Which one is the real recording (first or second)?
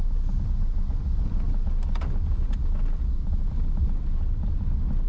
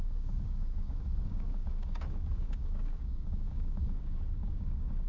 first